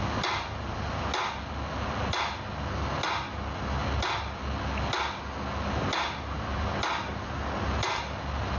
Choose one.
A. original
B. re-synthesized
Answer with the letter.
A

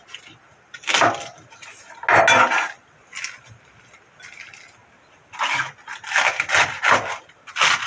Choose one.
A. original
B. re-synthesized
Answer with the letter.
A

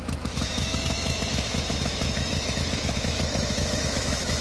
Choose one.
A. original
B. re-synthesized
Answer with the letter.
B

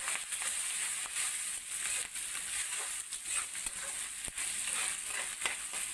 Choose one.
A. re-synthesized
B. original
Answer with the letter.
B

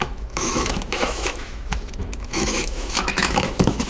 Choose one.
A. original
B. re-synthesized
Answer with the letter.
B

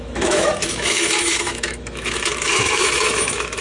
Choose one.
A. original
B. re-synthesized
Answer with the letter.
B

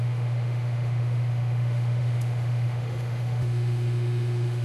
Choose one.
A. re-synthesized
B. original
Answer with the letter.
A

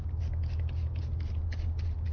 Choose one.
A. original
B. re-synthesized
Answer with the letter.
A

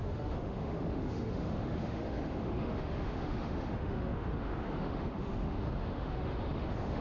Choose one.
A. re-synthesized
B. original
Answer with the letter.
A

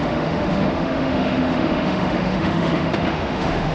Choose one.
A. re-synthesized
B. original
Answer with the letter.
A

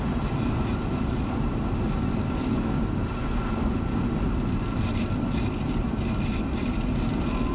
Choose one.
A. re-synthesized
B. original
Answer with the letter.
B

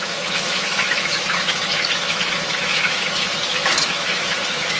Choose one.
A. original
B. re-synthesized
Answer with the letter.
B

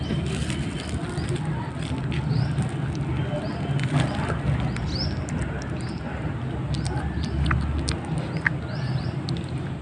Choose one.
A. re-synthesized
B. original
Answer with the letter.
B